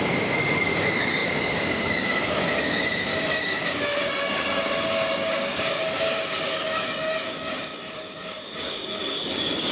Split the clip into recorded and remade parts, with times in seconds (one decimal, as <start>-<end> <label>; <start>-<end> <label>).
0.0-9.7 remade